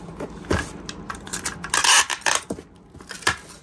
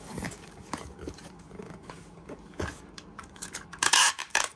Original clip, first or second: first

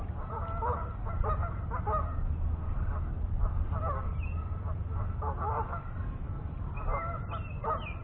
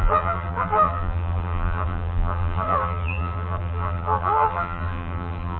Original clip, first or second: first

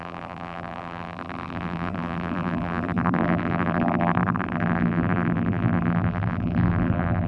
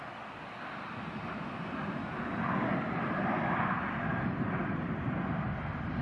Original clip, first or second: second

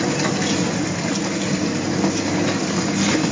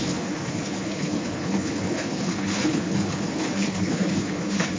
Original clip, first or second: first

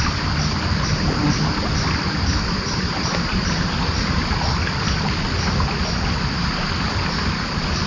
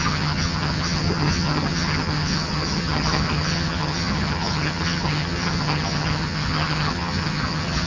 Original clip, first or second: first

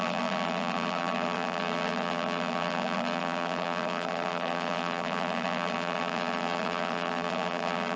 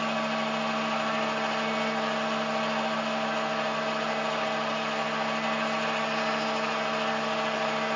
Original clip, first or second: second